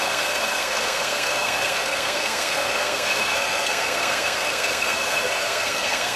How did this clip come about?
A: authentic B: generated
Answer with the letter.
B